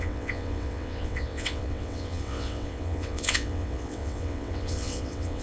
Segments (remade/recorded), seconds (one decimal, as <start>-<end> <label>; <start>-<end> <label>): 0.0-5.4 remade